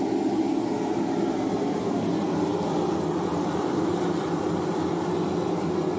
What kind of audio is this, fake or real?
real